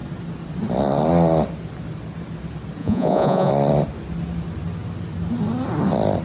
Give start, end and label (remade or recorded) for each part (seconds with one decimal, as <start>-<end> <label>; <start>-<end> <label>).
0.0-2.8 recorded; 2.8-3.5 remade; 3.5-6.2 recorded